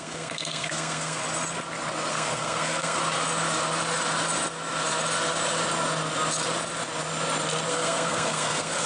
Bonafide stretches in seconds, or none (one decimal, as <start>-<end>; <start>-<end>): 1.2-2.1; 3.0-7.7